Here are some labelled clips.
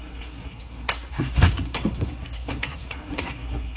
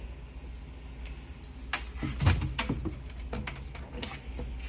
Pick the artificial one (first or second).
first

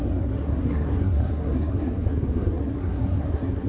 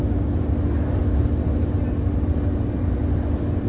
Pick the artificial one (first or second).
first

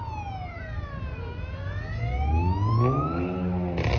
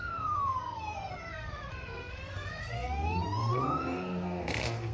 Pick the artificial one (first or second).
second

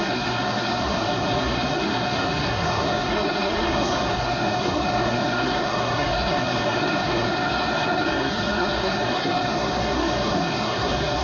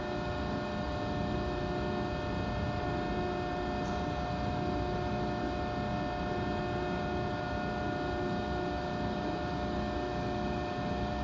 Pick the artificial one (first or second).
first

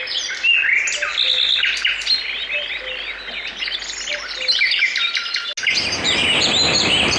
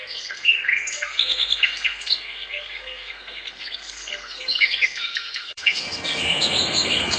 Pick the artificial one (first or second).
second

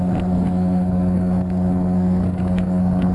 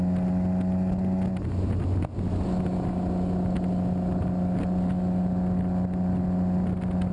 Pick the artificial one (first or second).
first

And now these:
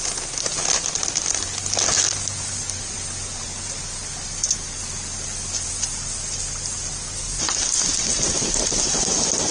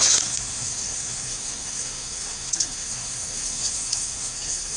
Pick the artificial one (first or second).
second